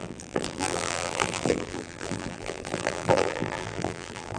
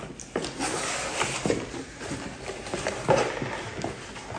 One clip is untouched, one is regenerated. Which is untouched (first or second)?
second